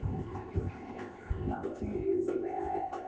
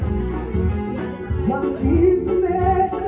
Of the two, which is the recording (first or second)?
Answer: second